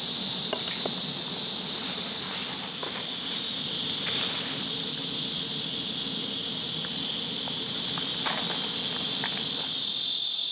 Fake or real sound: real